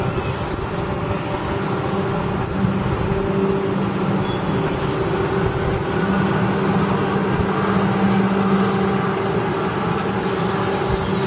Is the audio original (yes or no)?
yes